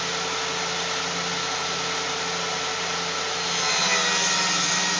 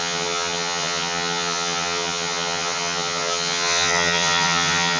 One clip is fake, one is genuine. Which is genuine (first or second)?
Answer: first